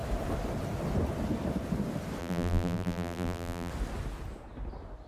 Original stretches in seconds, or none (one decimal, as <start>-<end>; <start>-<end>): 0.0-2.2; 3.7-5.1